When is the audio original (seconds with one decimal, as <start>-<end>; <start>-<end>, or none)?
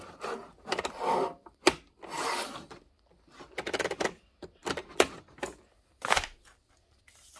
0.0-7.4